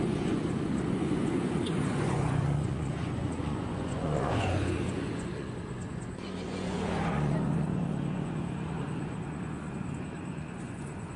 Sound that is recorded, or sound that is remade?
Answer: remade